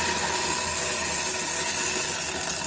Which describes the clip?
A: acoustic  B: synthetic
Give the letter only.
A